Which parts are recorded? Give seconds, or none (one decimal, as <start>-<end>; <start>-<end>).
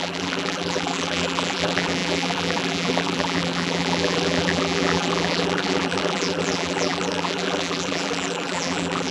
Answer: none